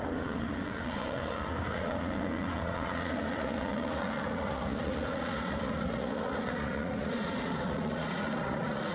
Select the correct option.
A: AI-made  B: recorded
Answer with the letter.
A